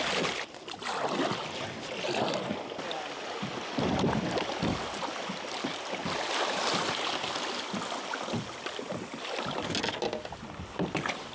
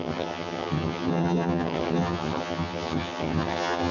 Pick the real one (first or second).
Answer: first